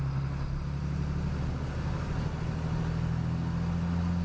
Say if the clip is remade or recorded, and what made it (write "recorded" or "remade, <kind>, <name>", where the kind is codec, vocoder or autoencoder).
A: recorded